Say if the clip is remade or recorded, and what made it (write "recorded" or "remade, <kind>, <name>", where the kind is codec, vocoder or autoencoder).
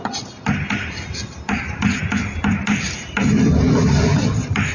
recorded